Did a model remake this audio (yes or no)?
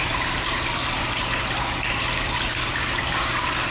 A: no